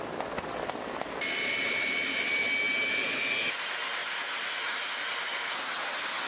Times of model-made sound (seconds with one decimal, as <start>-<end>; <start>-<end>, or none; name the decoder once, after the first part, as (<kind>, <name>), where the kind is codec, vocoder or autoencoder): none